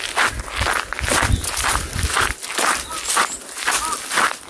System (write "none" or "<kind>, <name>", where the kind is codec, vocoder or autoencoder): none